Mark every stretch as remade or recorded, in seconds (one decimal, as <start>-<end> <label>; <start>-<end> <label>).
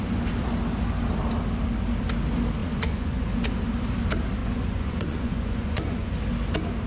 0.0-2.6 recorded; 2.6-3.3 remade; 3.3-4.4 recorded; 4.4-6.1 remade; 6.1-6.9 recorded